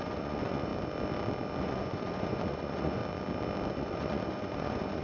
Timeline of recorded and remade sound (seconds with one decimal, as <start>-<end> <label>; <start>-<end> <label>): 0.0-0.7 remade; 0.7-1.6 recorded; 1.6-3.0 remade; 3.0-3.7 recorded; 3.7-5.0 remade